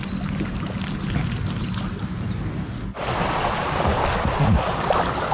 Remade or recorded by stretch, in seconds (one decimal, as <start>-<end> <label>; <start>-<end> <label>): 0.0-5.3 recorded

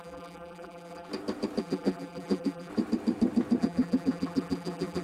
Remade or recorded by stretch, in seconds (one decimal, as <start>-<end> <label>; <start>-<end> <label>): 0.0-1.1 remade; 1.1-1.6 recorded; 1.6-2.7 remade; 2.7-3.6 recorded; 3.6-5.0 remade

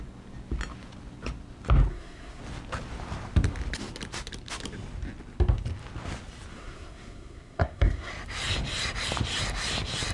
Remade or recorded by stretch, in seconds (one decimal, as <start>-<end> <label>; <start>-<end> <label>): 0.0-1.9 recorded; 1.9-2.4 remade; 2.4-6.5 recorded; 6.5-8.1 remade; 8.1-10.1 recorded

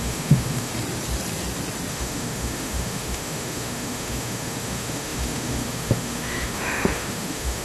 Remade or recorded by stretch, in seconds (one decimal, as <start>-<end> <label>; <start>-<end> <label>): 0.0-0.7 remade; 0.7-1.9 recorded; 1.9-7.6 remade